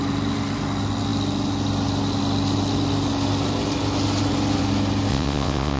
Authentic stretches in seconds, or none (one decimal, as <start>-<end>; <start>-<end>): 0.0-5.1